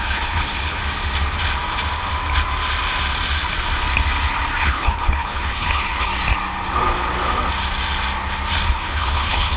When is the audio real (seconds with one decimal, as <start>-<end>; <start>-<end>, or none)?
0.8-4.6; 6.1-8.7